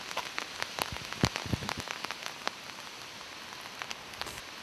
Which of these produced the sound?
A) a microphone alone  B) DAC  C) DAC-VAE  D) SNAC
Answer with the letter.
A